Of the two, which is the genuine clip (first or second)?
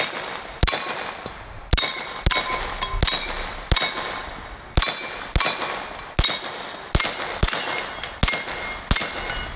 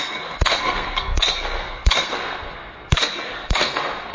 first